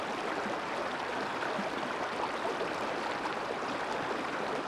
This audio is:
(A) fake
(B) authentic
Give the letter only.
B